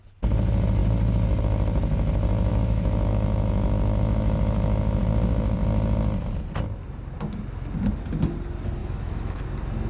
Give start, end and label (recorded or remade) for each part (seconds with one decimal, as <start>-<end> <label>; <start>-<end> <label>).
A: 0.0-2.5 recorded; 2.5-5.0 remade; 5.0-8.8 recorded; 8.8-9.4 remade; 9.4-9.9 recorded